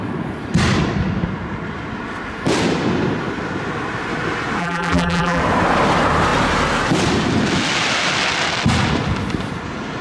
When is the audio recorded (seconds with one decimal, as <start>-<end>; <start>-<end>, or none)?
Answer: 0.0-4.6; 5.4-10.0